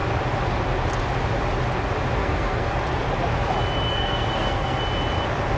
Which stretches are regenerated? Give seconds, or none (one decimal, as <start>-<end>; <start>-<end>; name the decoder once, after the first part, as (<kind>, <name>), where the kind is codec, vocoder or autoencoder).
2.2-2.7 (codec, SNAC); 3.9-4.8